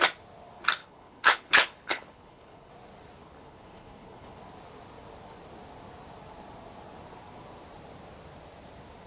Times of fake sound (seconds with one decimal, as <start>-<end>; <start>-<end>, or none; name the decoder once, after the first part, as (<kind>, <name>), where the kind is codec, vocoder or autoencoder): 0.8-2.7 (codec, HILCodec); 3.2-4.4